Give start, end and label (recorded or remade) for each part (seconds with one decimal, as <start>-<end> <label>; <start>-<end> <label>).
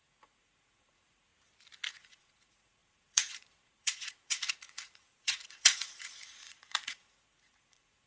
0.0-1.3 remade; 1.3-1.9 recorded; 1.9-8.1 remade